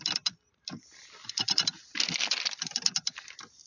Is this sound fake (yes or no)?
no